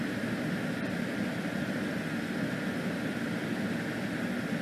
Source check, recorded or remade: recorded